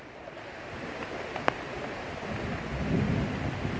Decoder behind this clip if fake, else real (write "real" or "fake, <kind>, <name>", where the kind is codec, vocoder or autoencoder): real